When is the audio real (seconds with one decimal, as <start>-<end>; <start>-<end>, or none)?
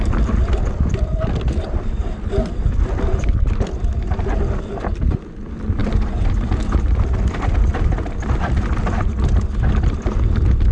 0.0-10.7